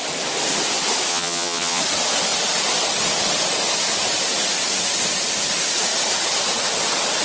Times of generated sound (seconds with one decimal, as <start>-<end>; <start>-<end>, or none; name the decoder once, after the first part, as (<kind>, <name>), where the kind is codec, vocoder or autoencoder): 1.1-1.8 (vocoder, HiFi-GAN)